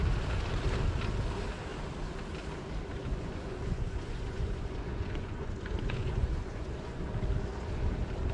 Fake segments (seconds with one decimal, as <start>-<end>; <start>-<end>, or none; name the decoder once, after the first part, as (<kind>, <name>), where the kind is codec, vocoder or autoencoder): 3.0-7.0 (vocoder, Vocos)